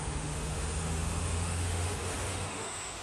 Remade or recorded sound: remade